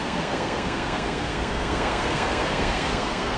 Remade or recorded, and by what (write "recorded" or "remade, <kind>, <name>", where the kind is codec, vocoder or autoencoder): remade, codec, SNAC